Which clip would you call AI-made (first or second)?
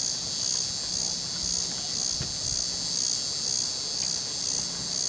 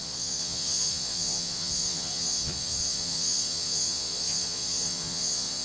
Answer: second